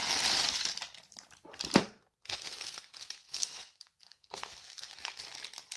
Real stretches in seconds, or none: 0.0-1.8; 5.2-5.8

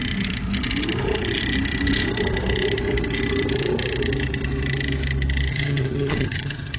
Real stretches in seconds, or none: 0.0-5.5

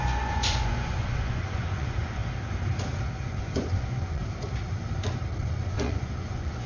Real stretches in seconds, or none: 2.2-3.2; 4.2-5.4

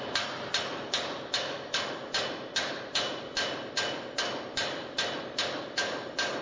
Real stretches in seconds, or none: 0.0-6.4

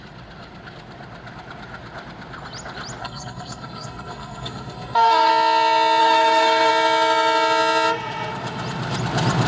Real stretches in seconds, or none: 0.0-3.0; 5.3-6.0; 6.7-9.5

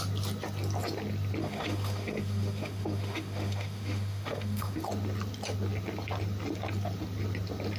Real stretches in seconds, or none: 0.0-1.4; 4.8-7.8

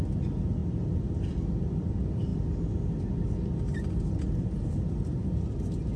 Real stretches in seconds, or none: 0.0-6.0

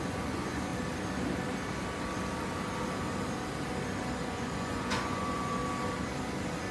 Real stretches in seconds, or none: 0.7-4.2; 5.6-6.7